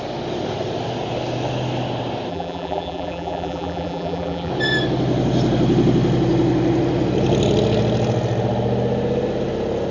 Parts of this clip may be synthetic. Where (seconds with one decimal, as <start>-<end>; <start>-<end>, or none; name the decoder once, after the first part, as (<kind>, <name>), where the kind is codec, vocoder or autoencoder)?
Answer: 2.3-4.5 (vocoder, BigVGAN v2)